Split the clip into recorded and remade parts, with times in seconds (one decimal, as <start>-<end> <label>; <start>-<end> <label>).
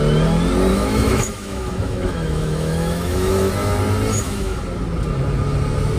0.0-0.7 recorded; 0.7-3.5 remade; 3.5-4.1 recorded; 4.1-4.6 remade; 4.6-6.0 recorded